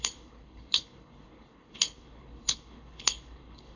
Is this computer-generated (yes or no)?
yes